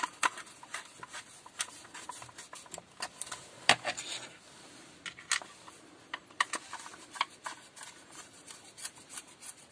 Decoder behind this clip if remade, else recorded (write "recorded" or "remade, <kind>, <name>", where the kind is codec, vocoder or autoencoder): recorded